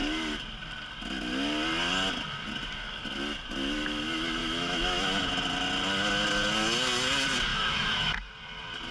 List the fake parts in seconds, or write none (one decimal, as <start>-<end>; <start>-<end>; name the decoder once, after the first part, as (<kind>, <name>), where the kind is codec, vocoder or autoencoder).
4.4-5.3 (autoencoder, DAC-VAE); 7.5-8.3